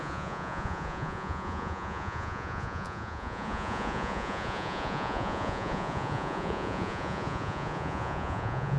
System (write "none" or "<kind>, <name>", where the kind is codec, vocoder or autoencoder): vocoder, Vocos